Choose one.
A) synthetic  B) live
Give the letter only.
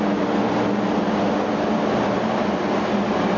B